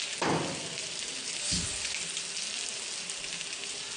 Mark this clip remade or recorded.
recorded